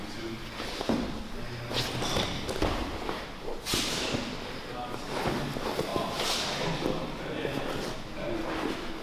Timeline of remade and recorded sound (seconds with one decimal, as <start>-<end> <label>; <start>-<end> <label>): 0.0-0.7 recorded; 0.7-1.3 remade; 1.3-9.0 recorded